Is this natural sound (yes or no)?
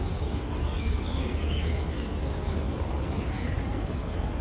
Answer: no